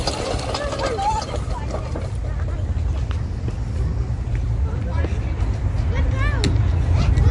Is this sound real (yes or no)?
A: yes